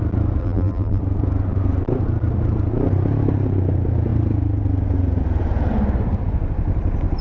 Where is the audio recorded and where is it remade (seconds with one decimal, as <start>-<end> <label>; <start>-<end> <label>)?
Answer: 0.0-0.4 recorded; 0.4-1.0 remade; 1.0-7.2 recorded